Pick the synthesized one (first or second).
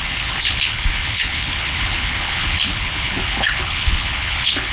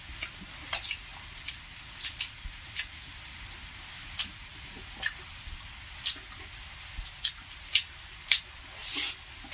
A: first